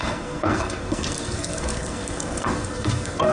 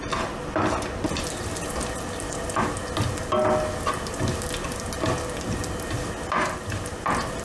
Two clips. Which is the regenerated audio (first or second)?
first